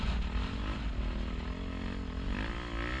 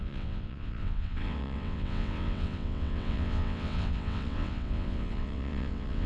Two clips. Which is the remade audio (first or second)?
second